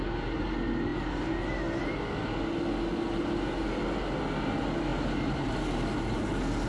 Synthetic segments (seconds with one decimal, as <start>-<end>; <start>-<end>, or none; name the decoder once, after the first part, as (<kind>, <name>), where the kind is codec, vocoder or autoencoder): none